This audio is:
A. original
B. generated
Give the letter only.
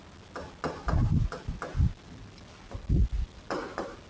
A